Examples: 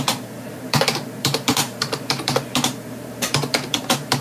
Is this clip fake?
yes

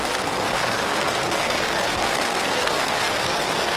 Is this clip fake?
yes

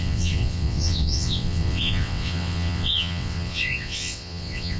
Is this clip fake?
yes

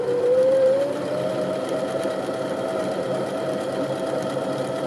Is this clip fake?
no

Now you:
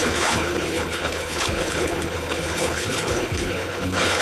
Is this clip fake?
yes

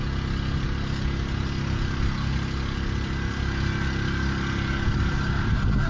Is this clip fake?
no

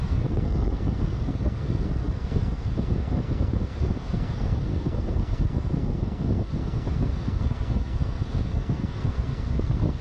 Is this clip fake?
yes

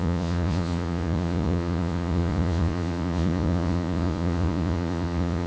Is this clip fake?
yes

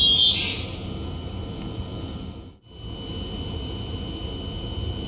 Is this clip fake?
no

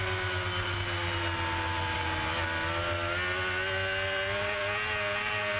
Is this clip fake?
no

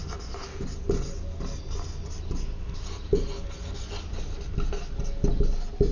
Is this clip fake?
no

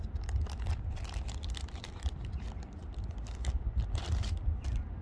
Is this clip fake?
no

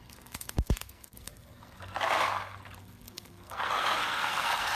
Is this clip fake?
yes